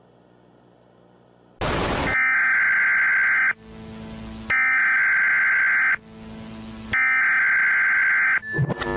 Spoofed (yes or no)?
no